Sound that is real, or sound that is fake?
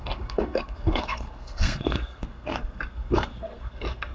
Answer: fake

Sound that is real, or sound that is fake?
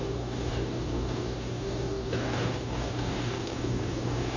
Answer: fake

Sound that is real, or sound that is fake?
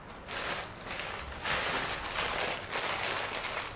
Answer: real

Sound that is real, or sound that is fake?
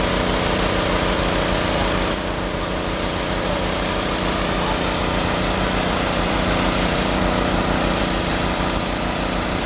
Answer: fake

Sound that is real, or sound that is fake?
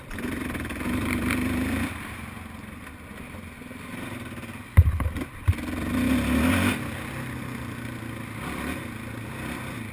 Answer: real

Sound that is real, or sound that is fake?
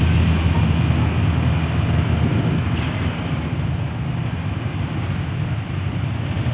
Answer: real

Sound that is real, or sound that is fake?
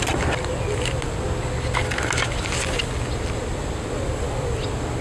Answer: real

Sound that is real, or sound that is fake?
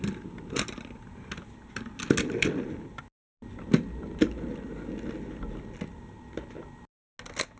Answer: real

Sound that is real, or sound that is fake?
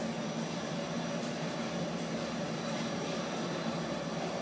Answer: fake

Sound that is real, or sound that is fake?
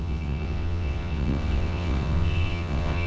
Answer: fake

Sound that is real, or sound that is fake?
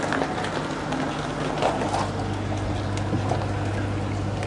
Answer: real